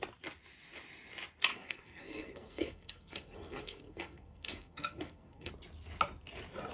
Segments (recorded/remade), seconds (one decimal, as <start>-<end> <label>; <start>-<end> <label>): 0.0-1.5 recorded; 1.5-5.5 remade; 5.5-6.7 recorded